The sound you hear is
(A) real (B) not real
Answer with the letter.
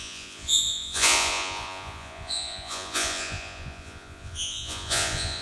B